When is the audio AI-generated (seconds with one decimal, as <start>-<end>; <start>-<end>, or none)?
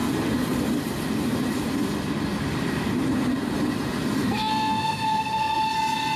4.2-5.6